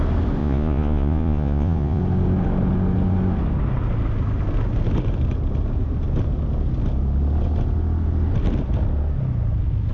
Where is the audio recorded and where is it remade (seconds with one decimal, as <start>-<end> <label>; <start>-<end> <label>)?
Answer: 0.0-0.4 recorded; 0.4-2.0 remade; 2.0-9.9 recorded